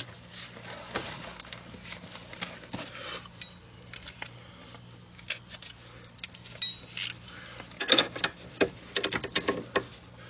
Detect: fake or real real